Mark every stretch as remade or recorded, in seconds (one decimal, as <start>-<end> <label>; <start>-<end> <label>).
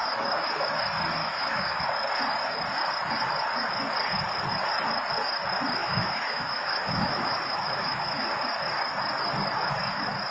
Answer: 0.0-1.2 recorded; 1.2-1.8 remade; 1.8-5.8 recorded; 5.8-8.4 remade; 8.4-10.3 recorded